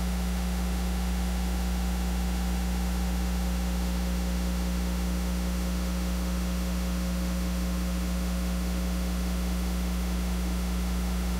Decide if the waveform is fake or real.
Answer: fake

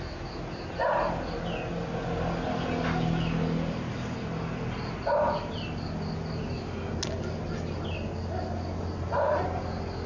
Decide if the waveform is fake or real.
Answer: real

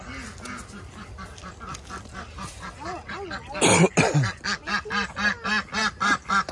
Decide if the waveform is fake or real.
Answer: real